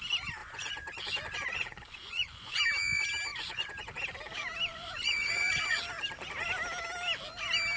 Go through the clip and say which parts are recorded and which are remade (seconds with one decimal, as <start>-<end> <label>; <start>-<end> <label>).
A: 0.0-0.4 recorded; 0.4-2.6 remade; 2.6-3.3 recorded; 3.3-4.0 remade; 4.0-4.7 recorded; 4.7-5.8 remade; 5.8-7.8 recorded